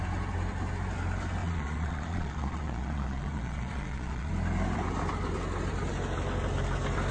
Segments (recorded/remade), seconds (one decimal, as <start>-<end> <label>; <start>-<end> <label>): 0.0-1.4 recorded; 1.4-4.3 remade; 4.3-7.1 recorded